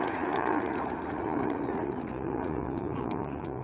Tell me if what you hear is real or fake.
fake